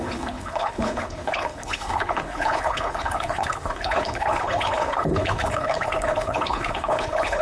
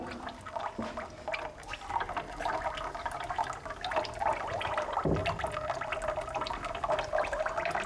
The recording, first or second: second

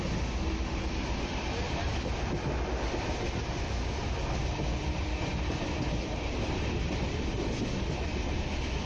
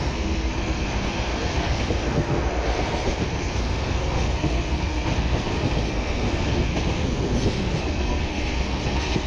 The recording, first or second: first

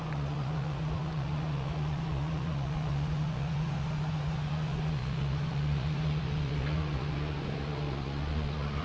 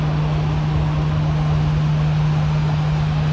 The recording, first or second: second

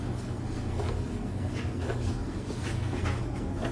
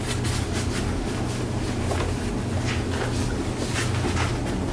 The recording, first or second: second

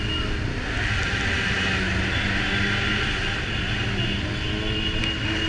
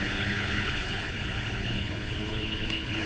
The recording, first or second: first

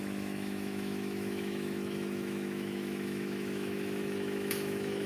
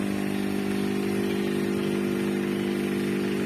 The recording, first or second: second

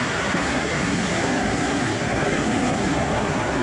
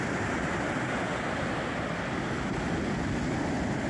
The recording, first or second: second